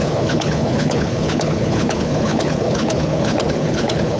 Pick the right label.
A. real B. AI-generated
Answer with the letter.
B